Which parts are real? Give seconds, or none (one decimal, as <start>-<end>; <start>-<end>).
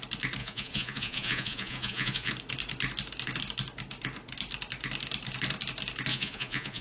0.0-0.4; 2.3-6.1